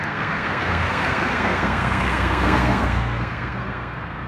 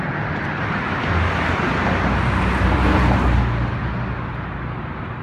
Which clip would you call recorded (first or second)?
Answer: second